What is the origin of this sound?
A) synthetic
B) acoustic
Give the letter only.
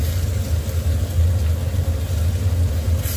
B